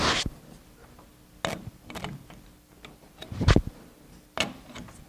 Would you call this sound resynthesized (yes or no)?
no